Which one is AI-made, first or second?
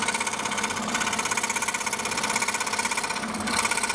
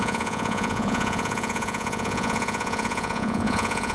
second